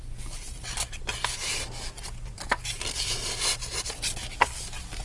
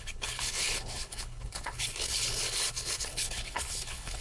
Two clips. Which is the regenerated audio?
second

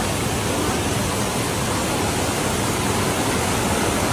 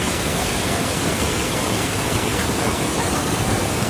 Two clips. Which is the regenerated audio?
second